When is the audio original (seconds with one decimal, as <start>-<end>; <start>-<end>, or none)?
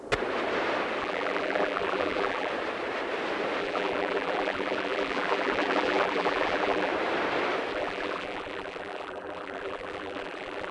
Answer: 0.0-1.0; 2.5-3.6; 6.9-7.7